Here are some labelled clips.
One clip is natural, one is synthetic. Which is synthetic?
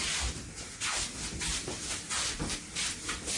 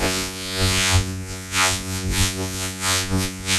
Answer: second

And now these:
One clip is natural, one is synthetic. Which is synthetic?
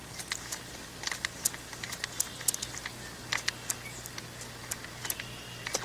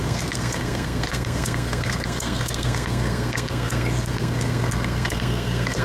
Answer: second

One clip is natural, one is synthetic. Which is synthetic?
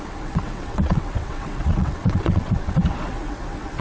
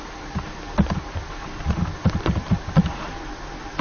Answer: first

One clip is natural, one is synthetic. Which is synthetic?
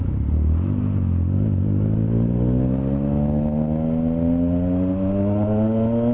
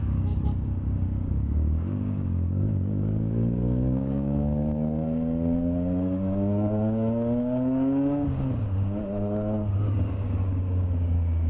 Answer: second